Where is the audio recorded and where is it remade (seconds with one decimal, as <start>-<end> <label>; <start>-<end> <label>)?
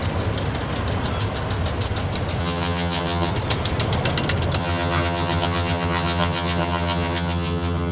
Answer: 0.0-2.4 recorded; 2.4-3.3 remade; 3.3-4.6 recorded; 4.6-7.9 remade